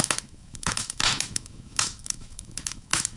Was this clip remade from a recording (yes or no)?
yes